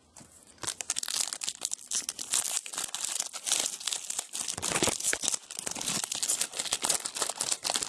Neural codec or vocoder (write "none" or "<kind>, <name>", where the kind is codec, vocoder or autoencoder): none